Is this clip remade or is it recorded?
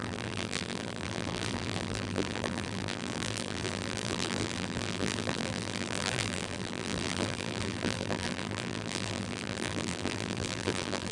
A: remade